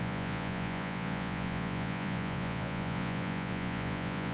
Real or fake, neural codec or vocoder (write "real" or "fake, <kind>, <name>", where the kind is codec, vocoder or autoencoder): fake, vocoder, Vocos